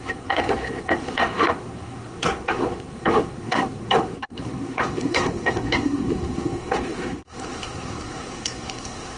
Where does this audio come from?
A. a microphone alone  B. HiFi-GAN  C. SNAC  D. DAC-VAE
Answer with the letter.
C